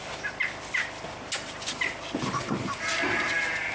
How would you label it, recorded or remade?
recorded